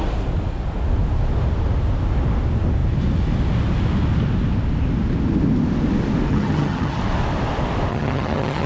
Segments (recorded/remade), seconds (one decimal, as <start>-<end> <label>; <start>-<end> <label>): 0.0-6.3 recorded; 6.3-7.0 remade; 7.0-7.9 recorded; 7.9-8.7 remade